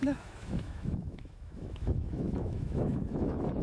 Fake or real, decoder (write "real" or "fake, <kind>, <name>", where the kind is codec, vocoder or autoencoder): fake, autoencoder, DAC-VAE